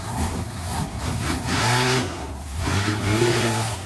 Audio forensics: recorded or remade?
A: remade